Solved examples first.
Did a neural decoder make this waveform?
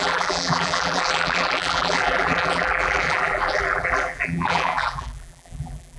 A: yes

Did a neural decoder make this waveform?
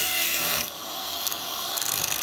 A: yes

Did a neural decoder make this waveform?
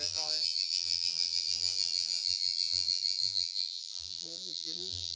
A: yes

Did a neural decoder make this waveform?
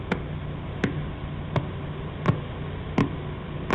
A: no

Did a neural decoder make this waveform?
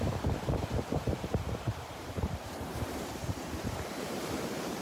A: yes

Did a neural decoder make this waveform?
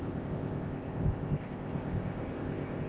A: yes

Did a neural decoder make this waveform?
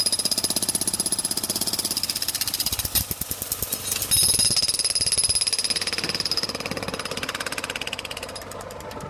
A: no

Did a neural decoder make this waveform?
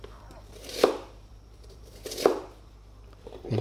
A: yes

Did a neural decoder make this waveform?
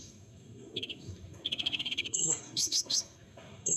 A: yes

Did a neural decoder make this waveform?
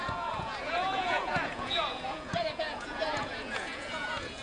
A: yes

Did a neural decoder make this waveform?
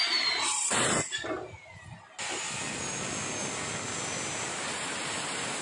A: no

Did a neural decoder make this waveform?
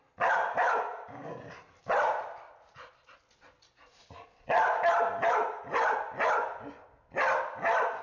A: no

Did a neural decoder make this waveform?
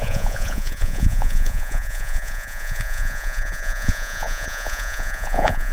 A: yes